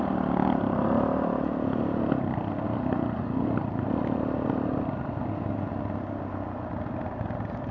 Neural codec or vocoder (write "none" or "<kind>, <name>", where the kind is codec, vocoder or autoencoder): none